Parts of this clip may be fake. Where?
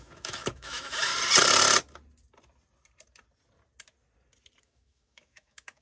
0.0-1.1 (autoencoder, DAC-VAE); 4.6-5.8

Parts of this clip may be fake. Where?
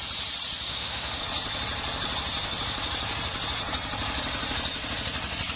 0.7-1.2 (autoencoder, DAC-VAE)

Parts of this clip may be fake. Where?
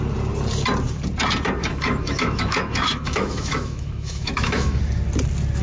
1.6-4.8 (autoencoder, DAC-VAE)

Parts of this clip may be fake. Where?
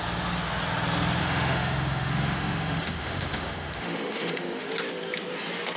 1.2-4.7 (autoencoder, DAC-VAE)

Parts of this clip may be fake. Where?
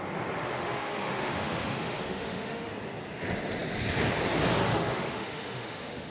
0.4-2.7 (autoencoder, DAC-VAE); 4.7-6.1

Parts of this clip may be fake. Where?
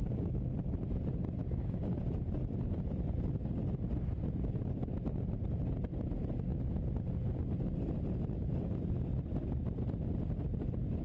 1.4-2.0 (autoencoder, DAC-VAE)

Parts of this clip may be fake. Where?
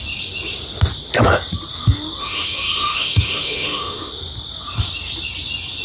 2.2-4.1 (autoencoder, DAC-VAE)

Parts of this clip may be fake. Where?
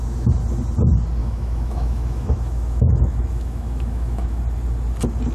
1.2-4.4 (autoencoder, DAC-VAE)